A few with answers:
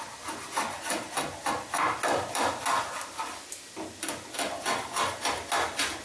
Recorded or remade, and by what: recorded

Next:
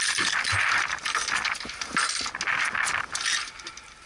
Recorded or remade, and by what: recorded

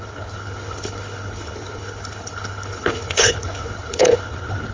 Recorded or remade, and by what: remade, codec, HILCodec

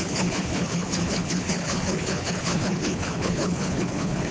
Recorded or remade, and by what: remade, codec, HILCodec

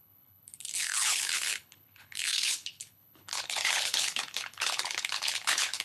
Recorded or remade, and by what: remade, codec, HILCodec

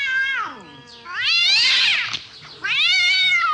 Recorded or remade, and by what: recorded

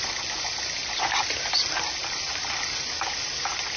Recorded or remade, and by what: recorded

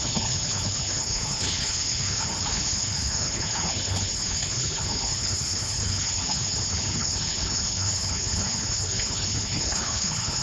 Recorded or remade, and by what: remade, codec, HILCodec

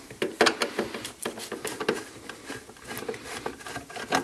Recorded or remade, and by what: recorded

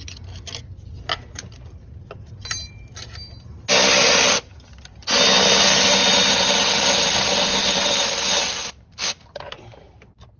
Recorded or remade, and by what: recorded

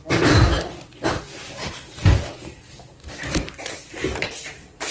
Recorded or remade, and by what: recorded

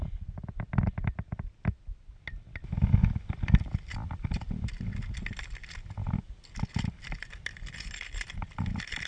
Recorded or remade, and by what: recorded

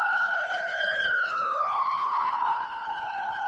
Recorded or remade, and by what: remade, codec, HILCodec